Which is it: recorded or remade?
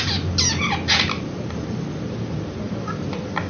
recorded